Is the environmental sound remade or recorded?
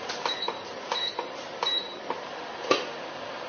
remade